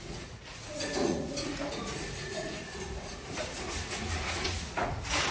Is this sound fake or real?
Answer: fake